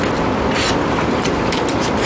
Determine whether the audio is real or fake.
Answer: real